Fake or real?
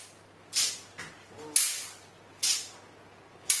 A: real